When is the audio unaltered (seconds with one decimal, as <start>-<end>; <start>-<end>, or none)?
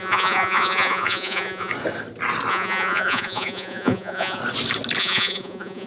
1.7-2.5; 4.4-5.0